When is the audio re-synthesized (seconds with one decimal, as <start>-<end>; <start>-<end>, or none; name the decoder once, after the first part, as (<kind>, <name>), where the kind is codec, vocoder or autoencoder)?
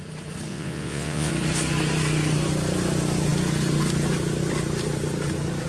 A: 0.5-1.3 (vocoder, Vocos)